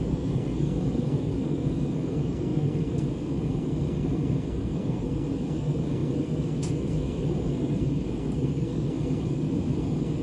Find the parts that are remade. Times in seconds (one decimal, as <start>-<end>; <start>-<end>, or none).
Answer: 0.0-10.2